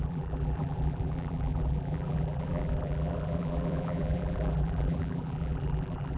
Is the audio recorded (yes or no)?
no